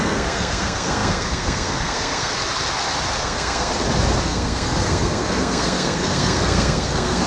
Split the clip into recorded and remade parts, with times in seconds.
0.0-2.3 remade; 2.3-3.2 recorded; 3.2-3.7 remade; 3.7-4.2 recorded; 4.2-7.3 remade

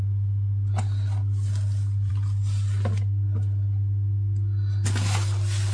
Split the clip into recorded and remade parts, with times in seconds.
0.0-5.7 recorded

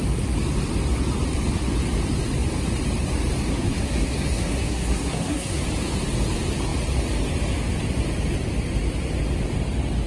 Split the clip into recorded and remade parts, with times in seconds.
0.0-3.5 recorded; 3.5-5.6 remade; 5.6-10.1 recorded

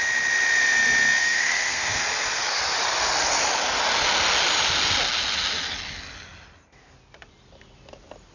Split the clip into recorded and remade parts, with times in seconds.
0.0-1.2 recorded; 1.2-2.0 remade; 2.0-8.3 recorded

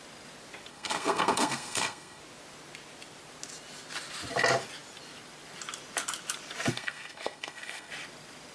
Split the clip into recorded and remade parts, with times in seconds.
0.0-0.7 recorded; 0.7-2.2 remade; 2.2-6.7 recorded; 6.7-7.9 remade; 7.9-8.5 recorded

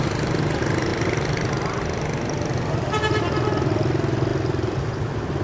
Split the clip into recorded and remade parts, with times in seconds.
0.0-5.4 recorded